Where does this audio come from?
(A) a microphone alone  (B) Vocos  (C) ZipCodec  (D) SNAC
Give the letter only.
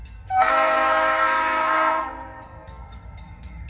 D